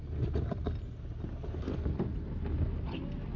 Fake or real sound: real